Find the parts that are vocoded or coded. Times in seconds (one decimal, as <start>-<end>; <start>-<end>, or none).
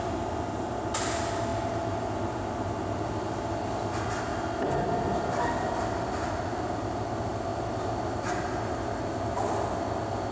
none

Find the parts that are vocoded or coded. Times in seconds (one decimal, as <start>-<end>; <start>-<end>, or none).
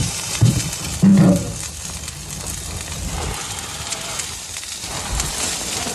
0.0-0.6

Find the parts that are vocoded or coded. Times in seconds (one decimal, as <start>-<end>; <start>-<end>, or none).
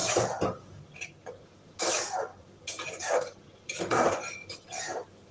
none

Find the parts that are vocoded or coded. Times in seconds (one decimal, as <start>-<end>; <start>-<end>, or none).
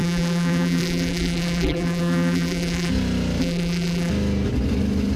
0.0-2.9; 3.4-4.1